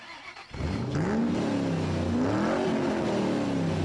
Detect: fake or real real